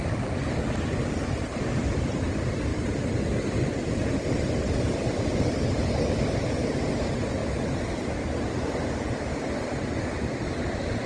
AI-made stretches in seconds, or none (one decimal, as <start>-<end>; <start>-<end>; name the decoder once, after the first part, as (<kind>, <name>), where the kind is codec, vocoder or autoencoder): none